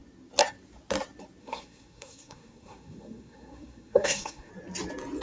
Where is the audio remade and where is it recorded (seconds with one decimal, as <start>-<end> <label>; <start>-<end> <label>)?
0.0-1.4 recorded; 1.4-4.5 remade; 4.5-5.2 recorded

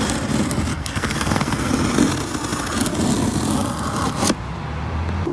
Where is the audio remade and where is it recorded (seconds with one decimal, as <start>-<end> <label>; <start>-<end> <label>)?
0.0-0.7 recorded; 0.7-1.7 remade; 1.7-5.3 recorded

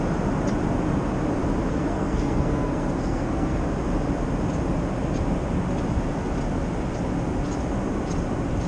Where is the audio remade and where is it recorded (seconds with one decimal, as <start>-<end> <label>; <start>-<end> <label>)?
0.0-1.7 recorded; 1.7-3.6 remade; 3.6-8.7 recorded

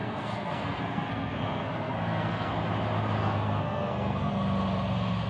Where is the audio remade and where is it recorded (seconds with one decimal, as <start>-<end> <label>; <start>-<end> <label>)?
0.0-2.5 remade; 2.5-3.2 recorded; 3.2-4.3 remade; 4.3-5.3 recorded

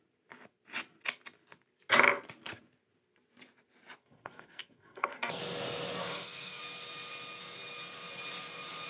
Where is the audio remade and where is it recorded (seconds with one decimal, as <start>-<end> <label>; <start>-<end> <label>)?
0.0-4.0 recorded; 4.0-5.4 remade; 5.4-6.0 recorded; 6.0-6.6 remade; 6.6-8.9 recorded

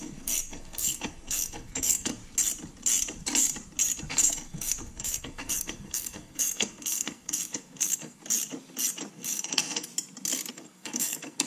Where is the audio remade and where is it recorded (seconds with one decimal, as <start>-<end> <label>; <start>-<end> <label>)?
0.0-2.2 remade; 2.2-4.1 recorded; 4.1-8.2 remade; 8.2-9.1 recorded; 9.1-9.9 remade; 9.9-10.5 recorded; 10.5-11.5 remade

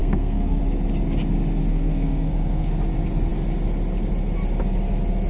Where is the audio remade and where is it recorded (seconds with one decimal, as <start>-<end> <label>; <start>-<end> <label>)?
0.0-0.6 remade; 0.6-1.7 recorded; 1.7-2.7 remade; 2.7-5.3 recorded